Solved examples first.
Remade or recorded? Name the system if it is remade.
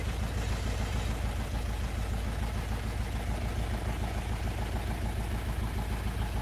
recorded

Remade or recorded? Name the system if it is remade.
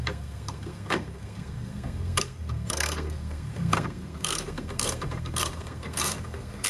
remade, codec, SNAC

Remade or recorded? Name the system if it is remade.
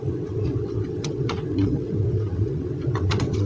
remade, vocoder, WaveNeXt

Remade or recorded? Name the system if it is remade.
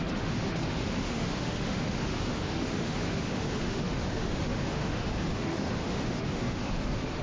remade, autoencoder, DAC-VAE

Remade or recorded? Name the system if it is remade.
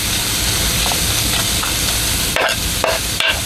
recorded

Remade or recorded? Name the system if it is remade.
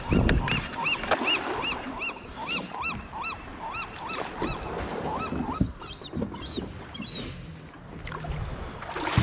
recorded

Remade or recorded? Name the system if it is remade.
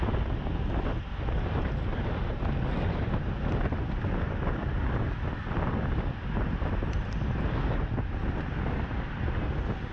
recorded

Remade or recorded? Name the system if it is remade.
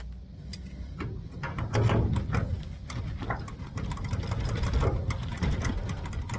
recorded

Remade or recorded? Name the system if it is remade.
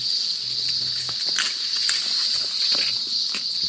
recorded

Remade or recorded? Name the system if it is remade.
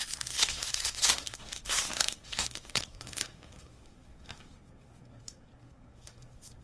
remade, codec, SNAC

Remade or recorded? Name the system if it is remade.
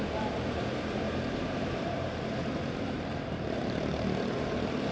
remade, vocoder, BigVGAN v2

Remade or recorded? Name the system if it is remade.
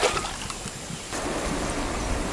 recorded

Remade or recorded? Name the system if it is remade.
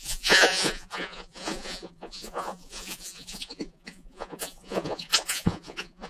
remade, vocoder, Vocos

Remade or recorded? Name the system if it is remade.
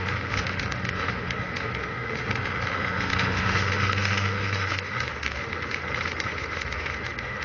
remade, autoencoder, DAC-VAE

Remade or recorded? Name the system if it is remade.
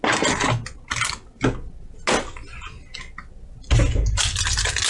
recorded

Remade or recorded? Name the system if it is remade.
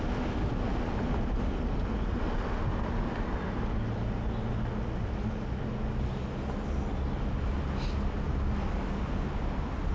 recorded